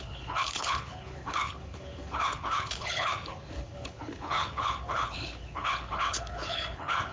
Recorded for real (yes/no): no